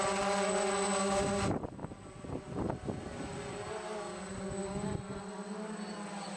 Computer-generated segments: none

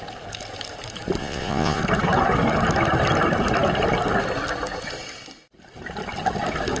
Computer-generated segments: 1.2-1.8 (vocoder, Vocos)

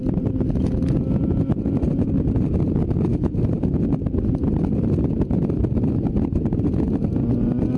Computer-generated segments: none

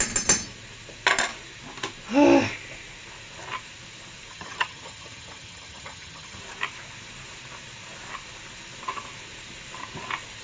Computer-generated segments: 4.3-6.4 (vocoder, HiFi-GAN)

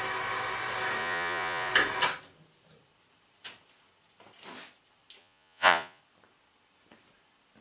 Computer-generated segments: 1.0-1.7 (vocoder, Vocos); 5.2-6.0

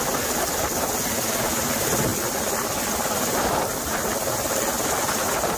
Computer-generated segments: 2.1-5.6 (vocoder, BigVGAN v2)